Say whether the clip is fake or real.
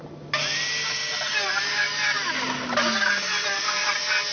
real